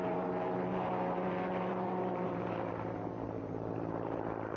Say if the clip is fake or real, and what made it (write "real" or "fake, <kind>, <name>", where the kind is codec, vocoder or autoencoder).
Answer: fake, vocoder, BigVGAN v2